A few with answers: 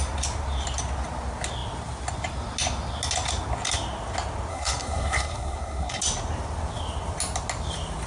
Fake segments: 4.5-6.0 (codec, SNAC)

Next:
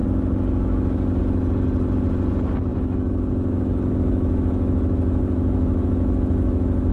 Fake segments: 0.0-1.2 (autoencoder, DAC-VAE); 2.7-6.9